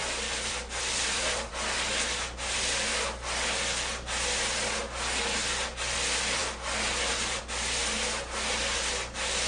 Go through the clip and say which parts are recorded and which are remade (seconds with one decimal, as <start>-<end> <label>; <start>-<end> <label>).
0.0-1.5 remade; 1.5-9.5 recorded